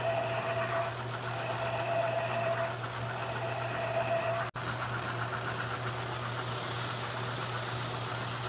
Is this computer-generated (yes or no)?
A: no